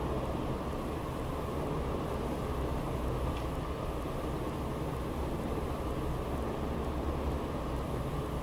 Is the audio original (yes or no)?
yes